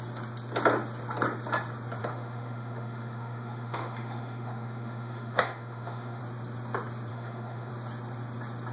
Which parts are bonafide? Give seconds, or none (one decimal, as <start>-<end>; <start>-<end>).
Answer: 0.0-2.0; 6.2-7.1; 7.7-8.7